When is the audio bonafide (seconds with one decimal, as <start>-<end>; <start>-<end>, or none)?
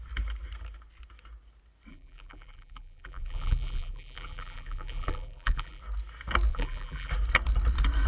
0.0-1.9; 5.8-6.5; 7.1-8.1